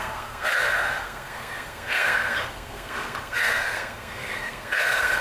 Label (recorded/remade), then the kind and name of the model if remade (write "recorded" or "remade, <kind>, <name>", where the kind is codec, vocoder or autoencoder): remade, codec, SNAC